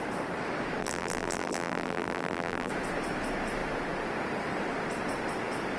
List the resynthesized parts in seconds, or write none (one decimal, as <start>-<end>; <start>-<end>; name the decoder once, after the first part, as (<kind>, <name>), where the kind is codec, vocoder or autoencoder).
0.8-2.7 (vocoder, BigVGAN v2)